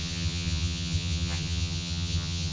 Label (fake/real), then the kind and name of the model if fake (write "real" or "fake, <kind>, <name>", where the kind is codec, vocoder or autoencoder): fake, vocoder, HiFi-GAN